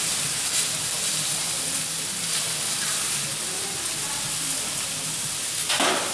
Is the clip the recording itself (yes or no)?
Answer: yes